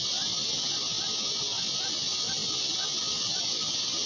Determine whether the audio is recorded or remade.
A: recorded